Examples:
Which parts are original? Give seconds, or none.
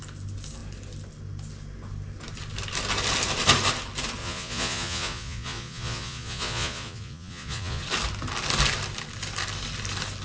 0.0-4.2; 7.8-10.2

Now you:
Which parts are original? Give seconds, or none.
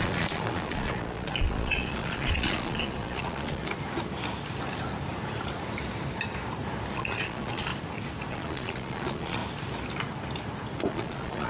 3.6-6.9; 7.7-8.3; 9.4-10.9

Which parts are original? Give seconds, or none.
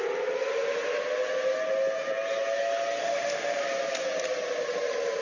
0.0-3.0; 3.6-5.2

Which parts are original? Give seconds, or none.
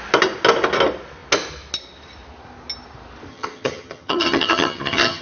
0.0-3.3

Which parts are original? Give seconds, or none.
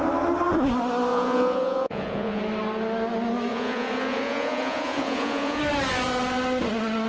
0.0-1.1; 2.4-3.5; 5.6-7.1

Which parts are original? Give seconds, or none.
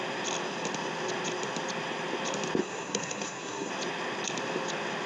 0.0-2.6; 3.7-5.1